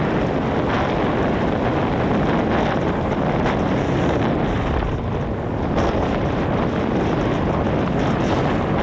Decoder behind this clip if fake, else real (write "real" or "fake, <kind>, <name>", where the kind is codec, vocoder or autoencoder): real